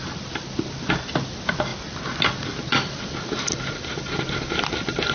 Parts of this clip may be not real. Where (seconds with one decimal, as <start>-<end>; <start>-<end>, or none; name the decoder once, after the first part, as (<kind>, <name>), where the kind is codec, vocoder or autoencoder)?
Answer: none